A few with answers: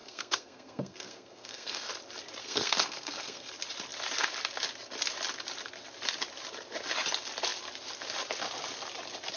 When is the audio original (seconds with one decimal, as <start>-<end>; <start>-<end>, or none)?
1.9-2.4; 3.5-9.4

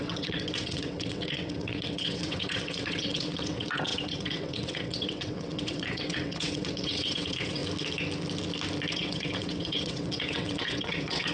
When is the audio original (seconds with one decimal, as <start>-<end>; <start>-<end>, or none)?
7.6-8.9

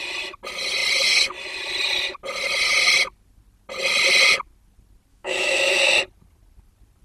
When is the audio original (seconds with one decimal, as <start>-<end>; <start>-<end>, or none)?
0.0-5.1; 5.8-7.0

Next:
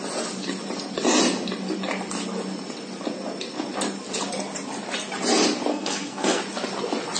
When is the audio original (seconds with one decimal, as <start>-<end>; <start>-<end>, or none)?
0.0-5.7; 6.4-7.2

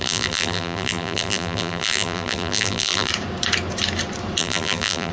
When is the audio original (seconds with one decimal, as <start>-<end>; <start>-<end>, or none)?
3.1-4.4

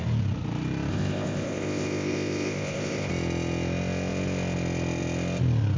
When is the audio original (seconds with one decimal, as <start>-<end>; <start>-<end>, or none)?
0.0-0.9; 3.1-5.8

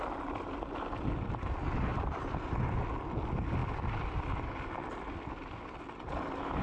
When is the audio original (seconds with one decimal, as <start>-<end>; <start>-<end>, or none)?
0.0-1.9; 2.6-6.6